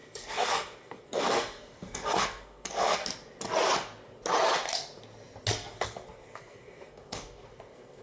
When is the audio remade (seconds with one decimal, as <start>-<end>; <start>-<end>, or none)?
0.0-3.0; 5.5-8.0